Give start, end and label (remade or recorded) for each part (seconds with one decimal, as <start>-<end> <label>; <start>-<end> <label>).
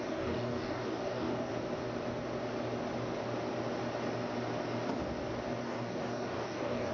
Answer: 0.0-1.5 remade; 1.5-5.6 recorded; 5.6-6.9 remade